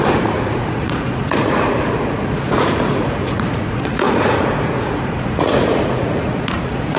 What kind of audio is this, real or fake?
fake